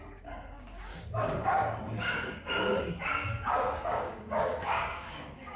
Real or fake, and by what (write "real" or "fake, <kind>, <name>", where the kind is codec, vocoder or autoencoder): fake, codec, DAC